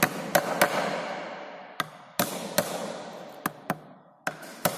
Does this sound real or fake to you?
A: real